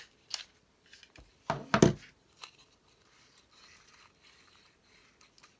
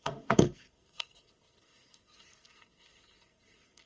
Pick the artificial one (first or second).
second